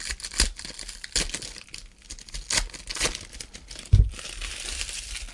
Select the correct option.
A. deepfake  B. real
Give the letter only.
B